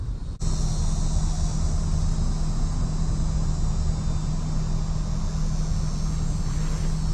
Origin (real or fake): real